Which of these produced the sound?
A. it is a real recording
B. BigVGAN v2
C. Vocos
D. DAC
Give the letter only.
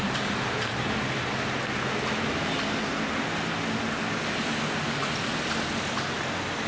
A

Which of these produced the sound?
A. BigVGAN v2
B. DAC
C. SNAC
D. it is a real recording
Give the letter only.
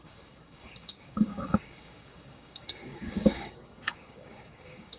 B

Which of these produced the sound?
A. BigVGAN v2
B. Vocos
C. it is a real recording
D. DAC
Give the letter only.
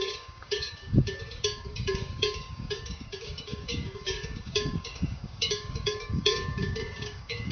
D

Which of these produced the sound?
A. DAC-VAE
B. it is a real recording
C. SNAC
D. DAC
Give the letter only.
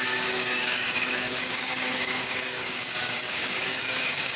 D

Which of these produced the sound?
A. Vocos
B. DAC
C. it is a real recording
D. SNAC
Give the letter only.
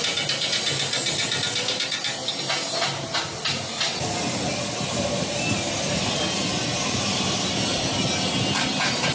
C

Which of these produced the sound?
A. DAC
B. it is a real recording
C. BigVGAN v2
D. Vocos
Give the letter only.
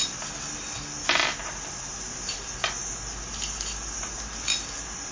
B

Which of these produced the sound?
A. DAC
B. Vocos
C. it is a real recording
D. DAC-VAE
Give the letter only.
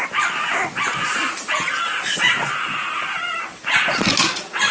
C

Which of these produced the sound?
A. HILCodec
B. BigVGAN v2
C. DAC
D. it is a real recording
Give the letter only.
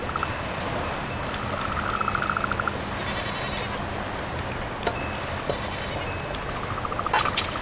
D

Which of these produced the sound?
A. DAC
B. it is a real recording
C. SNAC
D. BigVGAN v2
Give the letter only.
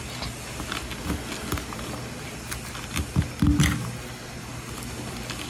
B